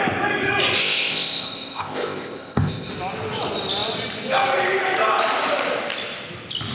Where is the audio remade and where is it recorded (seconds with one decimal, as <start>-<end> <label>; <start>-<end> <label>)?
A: 0.0-0.8 recorded; 0.8-2.9 remade; 2.9-6.7 recorded